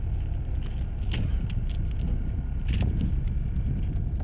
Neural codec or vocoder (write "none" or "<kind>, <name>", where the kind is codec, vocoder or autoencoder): none